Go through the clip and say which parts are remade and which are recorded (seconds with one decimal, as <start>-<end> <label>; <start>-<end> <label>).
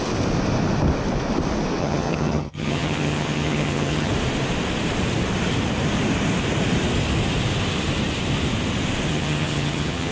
0.0-1.8 recorded; 1.8-4.1 remade; 4.1-9.1 recorded; 9.1-10.1 remade